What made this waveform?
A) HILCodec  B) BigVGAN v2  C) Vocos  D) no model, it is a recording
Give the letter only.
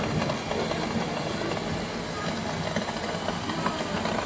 D